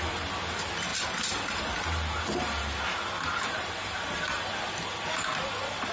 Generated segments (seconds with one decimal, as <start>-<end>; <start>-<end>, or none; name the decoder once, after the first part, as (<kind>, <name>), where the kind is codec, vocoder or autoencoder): none